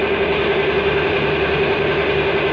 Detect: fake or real real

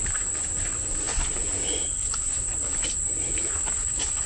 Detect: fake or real real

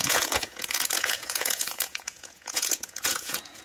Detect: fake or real fake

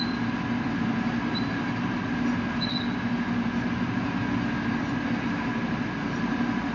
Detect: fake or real real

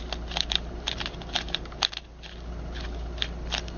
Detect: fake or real real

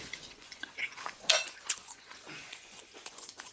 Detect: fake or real fake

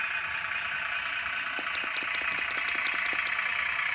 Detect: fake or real real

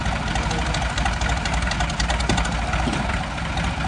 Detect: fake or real real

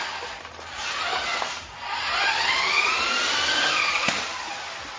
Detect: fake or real real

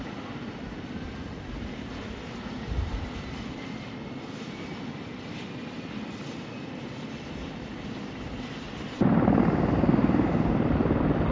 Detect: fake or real real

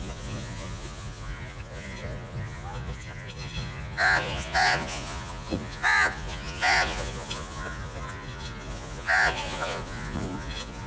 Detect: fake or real fake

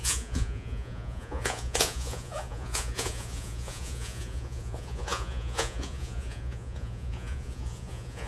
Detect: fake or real fake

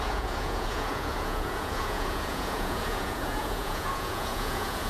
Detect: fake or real fake